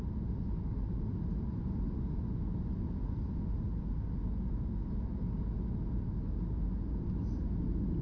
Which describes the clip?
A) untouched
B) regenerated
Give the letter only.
A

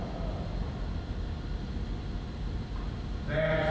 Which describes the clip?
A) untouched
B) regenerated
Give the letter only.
A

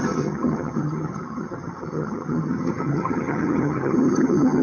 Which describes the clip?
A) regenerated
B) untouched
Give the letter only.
A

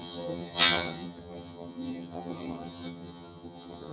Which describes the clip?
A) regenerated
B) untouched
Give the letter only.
A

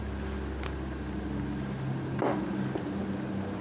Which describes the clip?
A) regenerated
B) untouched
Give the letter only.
B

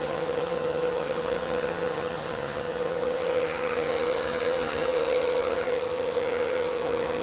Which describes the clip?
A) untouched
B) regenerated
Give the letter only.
B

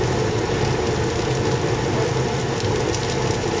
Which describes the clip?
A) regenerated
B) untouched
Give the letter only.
B